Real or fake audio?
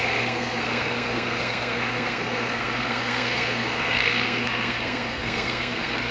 fake